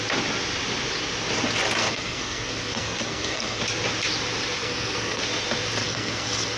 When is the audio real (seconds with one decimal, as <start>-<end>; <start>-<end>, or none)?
0.0-1.8; 3.6-4.6; 5.2-5.8

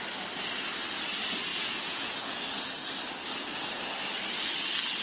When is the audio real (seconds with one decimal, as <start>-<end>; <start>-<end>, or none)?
0.0-1.5; 2.4-5.0

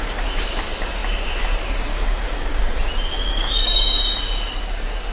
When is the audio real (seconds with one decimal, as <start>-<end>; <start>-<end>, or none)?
0.0-1.9; 2.6-3.3; 4.0-5.1

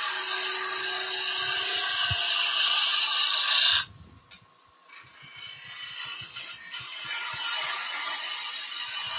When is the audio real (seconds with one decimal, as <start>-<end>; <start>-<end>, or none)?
0.0-9.2

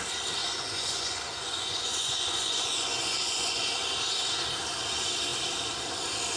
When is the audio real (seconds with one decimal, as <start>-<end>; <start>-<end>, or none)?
0.0-0.4; 3.7-6.4

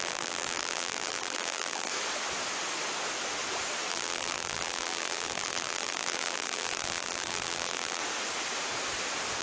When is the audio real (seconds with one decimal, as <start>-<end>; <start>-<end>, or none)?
1.9-3.9; 8.0-9.4

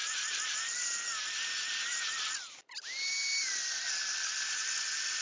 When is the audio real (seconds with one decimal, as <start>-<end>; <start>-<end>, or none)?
0.0-5.2

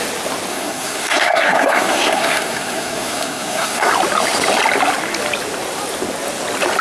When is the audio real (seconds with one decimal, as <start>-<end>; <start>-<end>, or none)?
0.0-0.5; 3.9-6.8